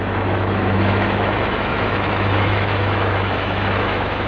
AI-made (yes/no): yes